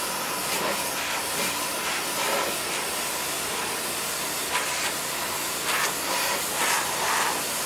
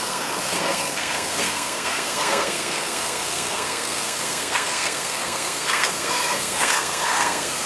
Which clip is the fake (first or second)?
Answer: second